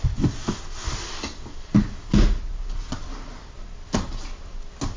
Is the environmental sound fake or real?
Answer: real